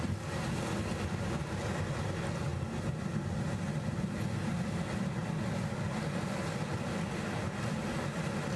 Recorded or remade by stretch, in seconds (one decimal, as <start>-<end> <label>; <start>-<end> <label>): 0.0-8.6 recorded